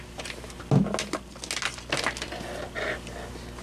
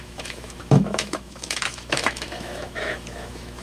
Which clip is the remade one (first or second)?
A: second